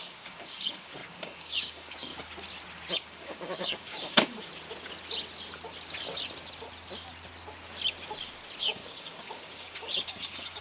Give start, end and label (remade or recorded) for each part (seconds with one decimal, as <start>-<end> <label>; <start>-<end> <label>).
0.0-2.1 remade; 2.1-2.9 recorded; 2.9-4.5 remade; 4.5-8.6 recorded; 8.6-10.6 remade